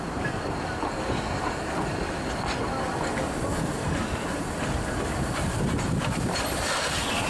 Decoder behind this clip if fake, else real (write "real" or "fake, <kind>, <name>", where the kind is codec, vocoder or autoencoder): real